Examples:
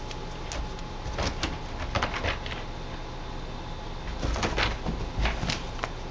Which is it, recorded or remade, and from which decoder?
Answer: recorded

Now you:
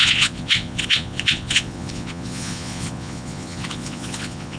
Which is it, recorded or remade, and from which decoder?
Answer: remade, vocoder, Vocos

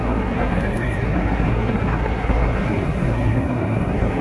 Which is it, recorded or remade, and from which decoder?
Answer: remade, codec, SNAC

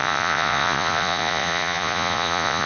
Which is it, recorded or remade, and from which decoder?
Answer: remade, vocoder, Vocos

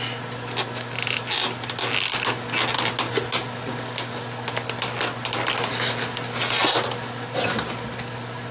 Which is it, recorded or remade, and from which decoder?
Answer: recorded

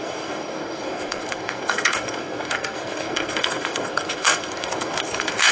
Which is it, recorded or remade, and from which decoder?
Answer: remade, codec, SNAC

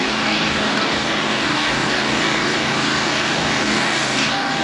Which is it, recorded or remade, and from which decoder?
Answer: remade, codec, DAC